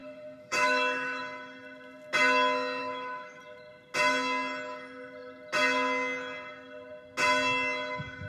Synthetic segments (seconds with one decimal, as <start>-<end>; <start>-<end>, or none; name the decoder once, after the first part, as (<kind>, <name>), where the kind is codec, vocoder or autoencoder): 0.0-1.2 (autoencoder, DAC-VAE); 2.8-3.4